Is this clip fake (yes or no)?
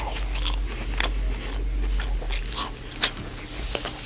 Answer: no